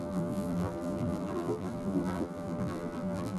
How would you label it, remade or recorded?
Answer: remade